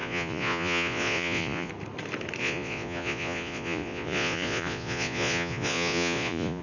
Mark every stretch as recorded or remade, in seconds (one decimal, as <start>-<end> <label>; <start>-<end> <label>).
0.0-1.7 remade; 1.7-2.4 recorded; 2.4-6.6 remade